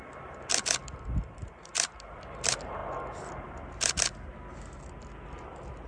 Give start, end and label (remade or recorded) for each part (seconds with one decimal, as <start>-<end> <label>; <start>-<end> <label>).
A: 0.0-2.8 remade; 2.8-5.0 recorded; 5.0-5.9 remade